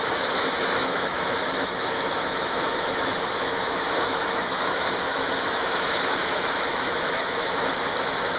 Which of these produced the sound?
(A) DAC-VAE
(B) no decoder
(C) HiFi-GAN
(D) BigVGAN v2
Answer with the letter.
A